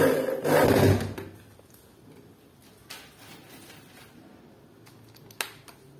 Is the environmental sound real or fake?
real